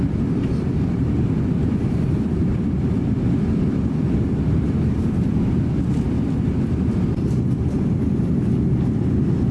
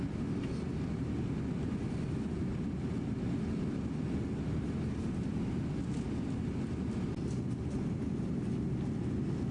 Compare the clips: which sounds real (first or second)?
second